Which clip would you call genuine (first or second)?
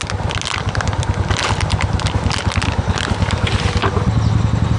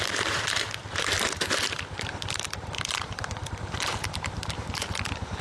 first